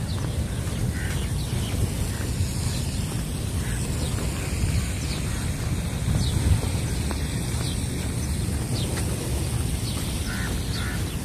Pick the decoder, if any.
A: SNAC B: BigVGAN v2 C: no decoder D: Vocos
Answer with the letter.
C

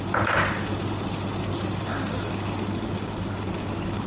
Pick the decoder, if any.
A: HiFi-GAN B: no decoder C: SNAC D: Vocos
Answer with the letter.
B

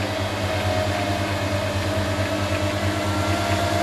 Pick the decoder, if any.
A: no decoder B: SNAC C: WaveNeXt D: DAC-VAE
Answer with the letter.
A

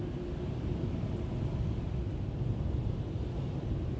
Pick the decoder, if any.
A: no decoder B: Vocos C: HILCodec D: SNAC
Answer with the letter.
A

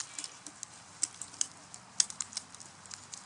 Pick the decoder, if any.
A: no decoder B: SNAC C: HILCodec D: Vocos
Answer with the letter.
A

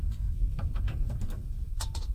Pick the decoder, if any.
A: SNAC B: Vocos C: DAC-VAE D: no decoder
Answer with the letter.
A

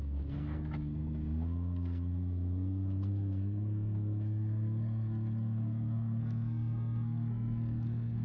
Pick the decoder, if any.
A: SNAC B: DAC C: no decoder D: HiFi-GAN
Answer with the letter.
A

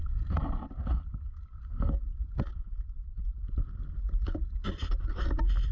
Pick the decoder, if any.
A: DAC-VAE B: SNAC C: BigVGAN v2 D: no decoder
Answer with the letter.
D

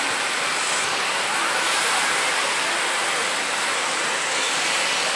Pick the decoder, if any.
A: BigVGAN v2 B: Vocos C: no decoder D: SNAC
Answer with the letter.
C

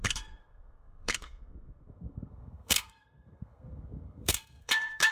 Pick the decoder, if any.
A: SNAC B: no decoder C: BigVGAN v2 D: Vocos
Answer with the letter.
A